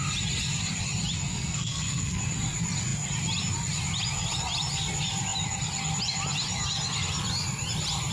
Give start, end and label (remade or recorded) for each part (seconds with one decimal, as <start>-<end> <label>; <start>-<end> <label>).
0.0-1.3 recorded; 1.3-2.2 remade; 2.2-8.1 recorded

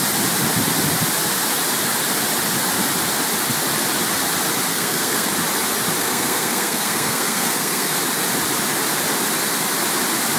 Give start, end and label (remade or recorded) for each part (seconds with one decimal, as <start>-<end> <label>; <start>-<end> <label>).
0.0-4.7 recorded; 4.7-5.3 remade; 5.3-6.0 recorded; 6.0-8.0 remade; 8.0-10.4 recorded

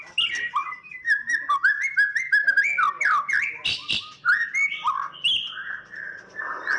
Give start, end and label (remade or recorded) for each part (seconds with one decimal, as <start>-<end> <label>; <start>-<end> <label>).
0.0-6.8 recorded